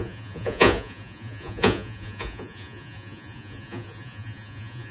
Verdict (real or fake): fake